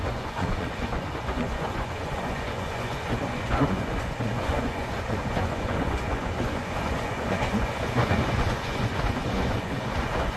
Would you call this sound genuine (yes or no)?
no